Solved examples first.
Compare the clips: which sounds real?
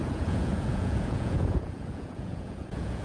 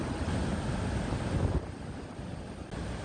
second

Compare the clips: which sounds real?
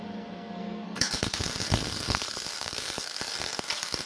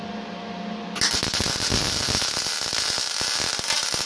second